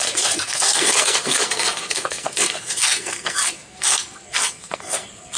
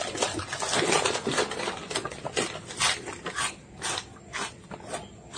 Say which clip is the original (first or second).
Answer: second